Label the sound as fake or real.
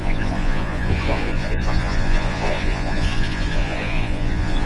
fake